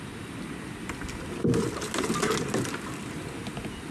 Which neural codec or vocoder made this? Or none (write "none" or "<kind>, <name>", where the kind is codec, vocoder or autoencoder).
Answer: none